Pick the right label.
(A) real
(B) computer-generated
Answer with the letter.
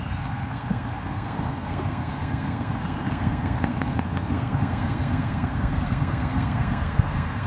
B